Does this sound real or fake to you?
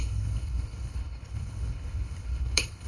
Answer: fake